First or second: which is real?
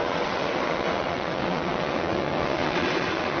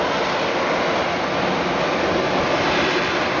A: second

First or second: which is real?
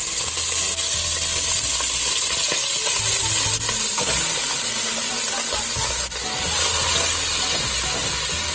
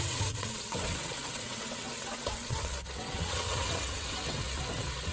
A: first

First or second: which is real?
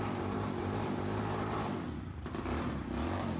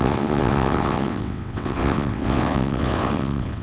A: first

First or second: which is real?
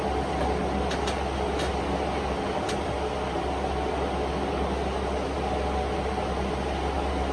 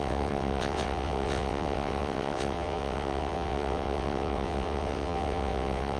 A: first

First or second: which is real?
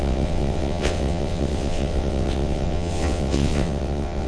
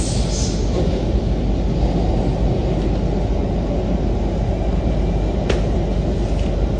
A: second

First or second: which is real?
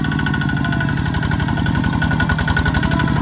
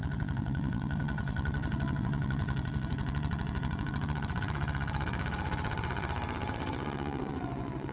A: first